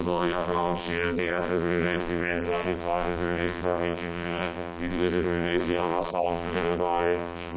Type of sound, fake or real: fake